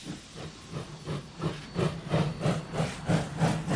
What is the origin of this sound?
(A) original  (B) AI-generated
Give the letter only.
A